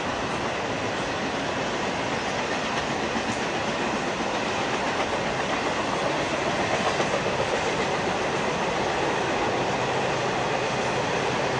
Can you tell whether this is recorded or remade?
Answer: recorded